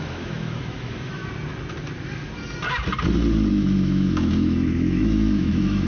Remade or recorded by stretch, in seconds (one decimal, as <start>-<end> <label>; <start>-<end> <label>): 0.0-1.2 remade; 1.2-3.5 recorded; 3.5-5.9 remade